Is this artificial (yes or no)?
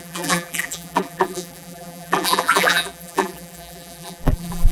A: yes